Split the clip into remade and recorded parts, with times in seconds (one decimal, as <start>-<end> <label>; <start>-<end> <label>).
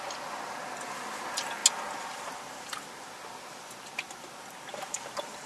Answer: 0.0-5.5 recorded